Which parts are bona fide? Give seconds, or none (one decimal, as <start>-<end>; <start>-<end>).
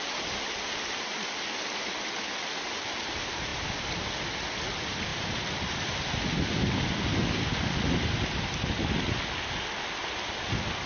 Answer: 0.0-5.1; 7.8-10.9